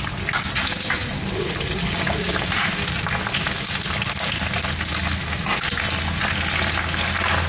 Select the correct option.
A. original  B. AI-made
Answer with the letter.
A